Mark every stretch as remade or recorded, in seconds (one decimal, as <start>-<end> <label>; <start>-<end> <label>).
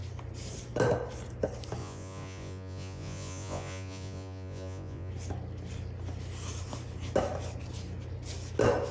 0.0-1.8 recorded; 1.8-5.1 remade; 5.1-8.9 recorded